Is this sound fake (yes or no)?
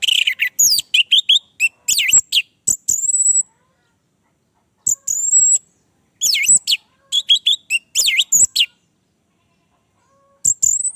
no